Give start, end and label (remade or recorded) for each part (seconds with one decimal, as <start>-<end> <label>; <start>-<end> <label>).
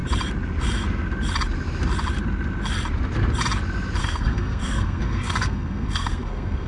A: 0.0-4.0 recorded; 4.0-6.7 remade